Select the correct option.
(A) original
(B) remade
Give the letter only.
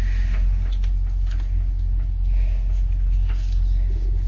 A